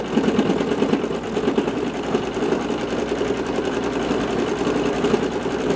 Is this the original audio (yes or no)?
no